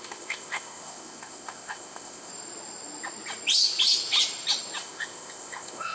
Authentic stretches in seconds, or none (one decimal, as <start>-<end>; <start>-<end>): 2.3-4.8